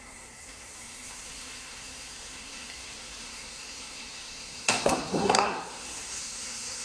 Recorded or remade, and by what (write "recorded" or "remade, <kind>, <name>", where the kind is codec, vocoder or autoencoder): remade, codec, SNAC